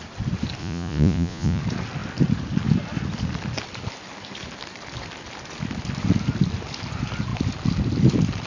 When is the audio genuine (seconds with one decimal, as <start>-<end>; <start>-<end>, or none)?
0.0-0.6; 1.6-8.5